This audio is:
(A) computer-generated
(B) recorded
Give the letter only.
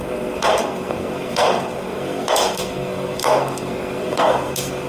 A